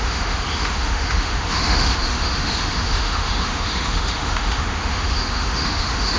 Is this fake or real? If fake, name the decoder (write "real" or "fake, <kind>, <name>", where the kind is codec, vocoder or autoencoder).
fake, autoencoder, DAC-VAE